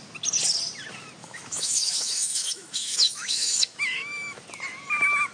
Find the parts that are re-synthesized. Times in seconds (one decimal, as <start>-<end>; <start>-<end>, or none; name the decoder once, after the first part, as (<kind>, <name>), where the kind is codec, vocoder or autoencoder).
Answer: 1.2-4.4 (autoencoder, DAC-VAE)